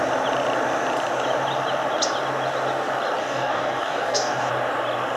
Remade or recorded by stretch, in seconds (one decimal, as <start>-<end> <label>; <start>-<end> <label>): 0.0-3.2 recorded; 3.2-4.5 remade; 4.5-5.2 recorded